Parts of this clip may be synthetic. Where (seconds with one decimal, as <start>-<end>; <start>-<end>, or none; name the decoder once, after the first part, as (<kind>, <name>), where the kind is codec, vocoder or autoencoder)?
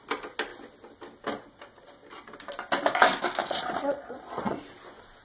3.4-4.6 (vocoder, Vocos)